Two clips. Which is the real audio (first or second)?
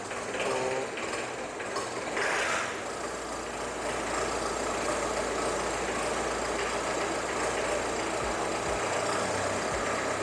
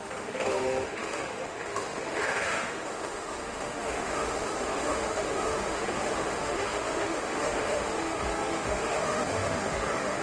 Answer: first